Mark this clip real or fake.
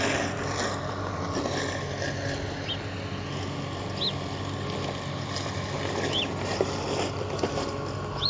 real